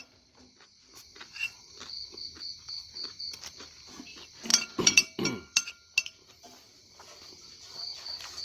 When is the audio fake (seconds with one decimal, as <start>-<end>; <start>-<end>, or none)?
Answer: 0.9-3.9; 4.5-5.7